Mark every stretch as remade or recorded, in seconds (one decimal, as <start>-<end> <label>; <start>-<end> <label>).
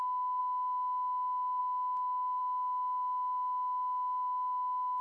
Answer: 0.0-5.0 recorded